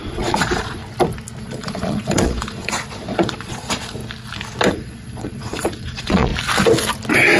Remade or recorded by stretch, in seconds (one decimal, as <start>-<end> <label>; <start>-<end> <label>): 0.0-0.8 remade; 0.8-1.4 recorded; 1.4-4.0 remade; 4.0-4.7 recorded; 4.7-6.3 remade; 6.3-7.4 recorded